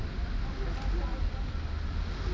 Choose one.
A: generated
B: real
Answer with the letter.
B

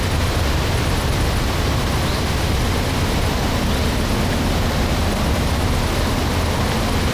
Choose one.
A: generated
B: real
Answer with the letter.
B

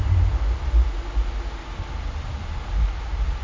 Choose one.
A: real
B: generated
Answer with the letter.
A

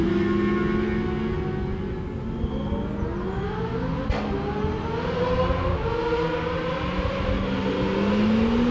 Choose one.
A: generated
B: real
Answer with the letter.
B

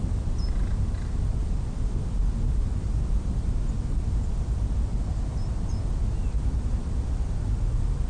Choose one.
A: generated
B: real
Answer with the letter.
B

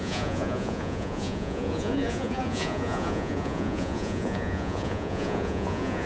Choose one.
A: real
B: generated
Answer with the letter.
B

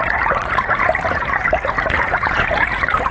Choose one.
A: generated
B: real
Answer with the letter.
A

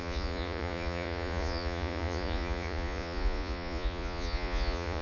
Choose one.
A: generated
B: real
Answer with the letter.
A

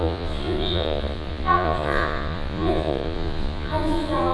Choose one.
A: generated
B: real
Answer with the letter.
A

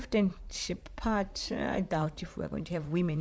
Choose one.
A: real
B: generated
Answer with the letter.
B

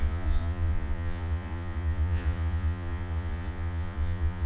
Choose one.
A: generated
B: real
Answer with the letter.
A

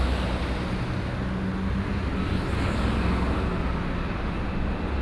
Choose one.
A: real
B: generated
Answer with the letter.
A